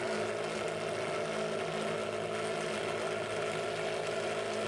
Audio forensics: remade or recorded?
recorded